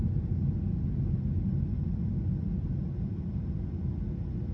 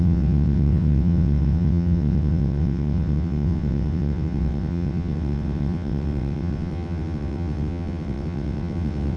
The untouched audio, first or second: first